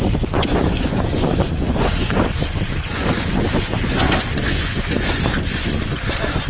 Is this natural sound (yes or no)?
no